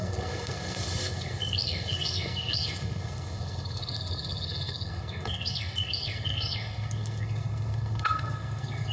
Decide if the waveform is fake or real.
fake